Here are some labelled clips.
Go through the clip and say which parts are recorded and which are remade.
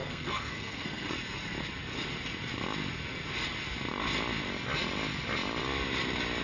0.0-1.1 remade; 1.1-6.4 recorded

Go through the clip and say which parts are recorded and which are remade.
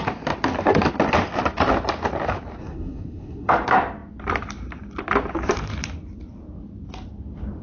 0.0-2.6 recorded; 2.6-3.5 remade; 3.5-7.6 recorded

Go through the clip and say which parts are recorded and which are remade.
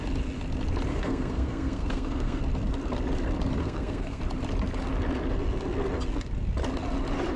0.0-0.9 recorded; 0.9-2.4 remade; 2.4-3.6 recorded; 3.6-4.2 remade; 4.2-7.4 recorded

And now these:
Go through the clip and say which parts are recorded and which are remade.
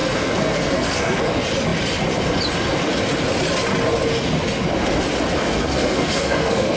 0.0-1.2 remade; 1.2-5.4 recorded; 5.4-6.8 remade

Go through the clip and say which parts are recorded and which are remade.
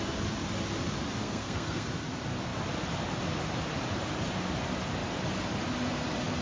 0.0-1.2 recorded; 1.2-1.9 remade; 1.9-6.4 recorded